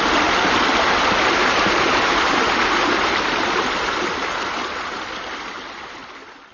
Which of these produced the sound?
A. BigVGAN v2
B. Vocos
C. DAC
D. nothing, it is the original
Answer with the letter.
D